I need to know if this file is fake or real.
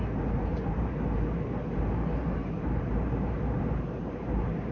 fake